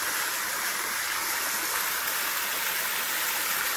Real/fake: real